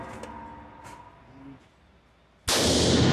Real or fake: real